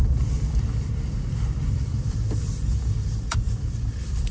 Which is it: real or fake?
fake